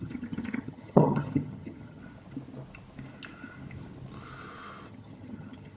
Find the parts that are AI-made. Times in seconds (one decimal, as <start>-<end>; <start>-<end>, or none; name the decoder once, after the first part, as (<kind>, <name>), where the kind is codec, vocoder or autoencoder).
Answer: 0.0-2.0 (vocoder, HiFi-GAN); 4.9-5.8